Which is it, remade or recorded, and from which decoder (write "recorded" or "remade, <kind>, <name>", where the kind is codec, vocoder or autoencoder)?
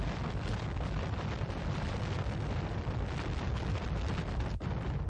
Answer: remade, vocoder, BigVGAN v2